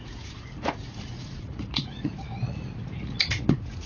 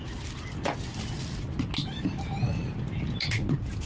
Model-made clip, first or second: first